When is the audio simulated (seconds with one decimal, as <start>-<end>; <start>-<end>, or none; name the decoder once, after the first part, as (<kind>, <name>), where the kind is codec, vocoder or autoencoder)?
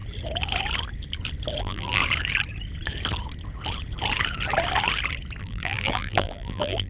1.6-2.0 (vocoder, BigVGAN v2); 5.4-6.9